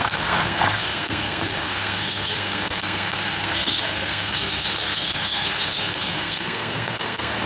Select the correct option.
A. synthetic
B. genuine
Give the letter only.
A